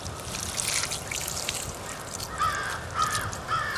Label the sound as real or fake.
real